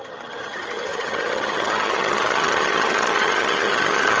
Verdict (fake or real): fake